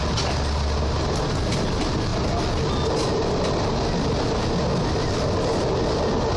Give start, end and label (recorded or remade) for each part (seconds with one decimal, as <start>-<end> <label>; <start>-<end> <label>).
0.0-6.4 recorded